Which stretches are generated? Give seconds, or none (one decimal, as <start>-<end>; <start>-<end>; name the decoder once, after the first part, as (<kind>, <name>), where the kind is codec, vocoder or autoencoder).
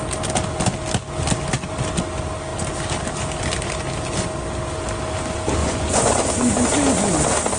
5.6-6.2 (vocoder, Vocos)